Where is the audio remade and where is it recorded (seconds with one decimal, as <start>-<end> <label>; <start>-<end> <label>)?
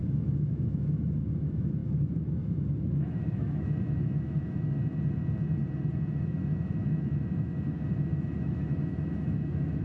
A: 0.0-4.8 remade; 4.8-6.1 recorded; 6.1-9.8 remade